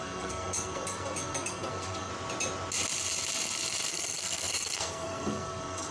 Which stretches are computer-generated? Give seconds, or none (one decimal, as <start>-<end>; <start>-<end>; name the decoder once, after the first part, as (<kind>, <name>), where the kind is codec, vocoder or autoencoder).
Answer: 0.0-2.1 (codec, SNAC); 3.9-5.9